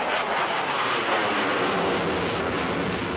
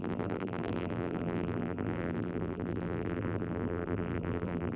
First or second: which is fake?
second